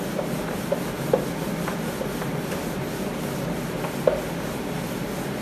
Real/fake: real